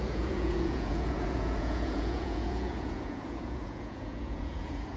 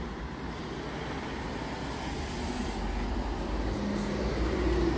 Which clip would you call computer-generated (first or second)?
first